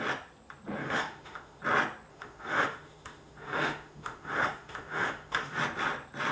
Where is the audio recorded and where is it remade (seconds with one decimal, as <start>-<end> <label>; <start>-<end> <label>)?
0.0-0.8 recorded; 0.8-1.6 remade; 1.6-2.1 recorded; 2.1-5.6 remade; 5.6-6.3 recorded